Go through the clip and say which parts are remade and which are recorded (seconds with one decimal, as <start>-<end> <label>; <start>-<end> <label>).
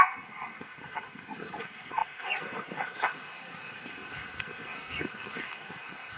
0.0-6.2 remade